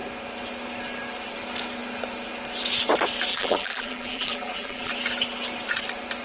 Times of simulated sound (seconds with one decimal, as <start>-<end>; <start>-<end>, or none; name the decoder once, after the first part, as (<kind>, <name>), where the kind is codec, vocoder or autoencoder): 3.3-4.9 (vocoder, BigVGAN v2)